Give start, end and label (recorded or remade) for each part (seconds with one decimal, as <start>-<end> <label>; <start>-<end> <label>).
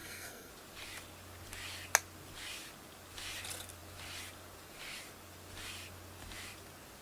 0.0-0.5 remade; 0.5-7.0 recorded